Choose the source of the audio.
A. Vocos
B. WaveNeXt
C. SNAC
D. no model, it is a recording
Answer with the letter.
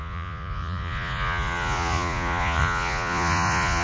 A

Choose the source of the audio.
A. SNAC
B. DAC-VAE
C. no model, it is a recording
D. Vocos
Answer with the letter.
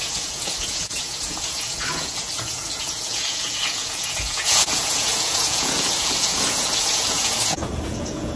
D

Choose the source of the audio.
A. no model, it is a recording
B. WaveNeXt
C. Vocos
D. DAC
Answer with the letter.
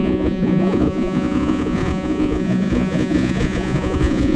C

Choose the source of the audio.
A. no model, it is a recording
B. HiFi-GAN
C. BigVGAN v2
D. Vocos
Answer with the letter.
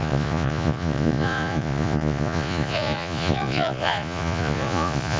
D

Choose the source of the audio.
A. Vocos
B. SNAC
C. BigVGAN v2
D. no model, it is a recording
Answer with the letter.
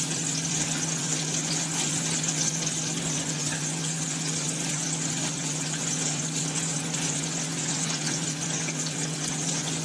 A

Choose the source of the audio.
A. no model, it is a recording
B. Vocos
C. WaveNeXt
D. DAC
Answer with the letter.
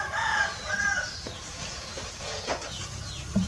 B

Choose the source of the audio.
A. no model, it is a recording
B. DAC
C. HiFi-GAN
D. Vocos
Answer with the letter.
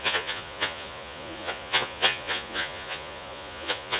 D